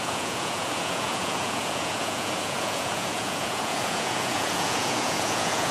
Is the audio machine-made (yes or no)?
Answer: yes